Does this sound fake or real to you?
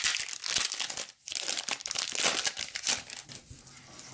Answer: real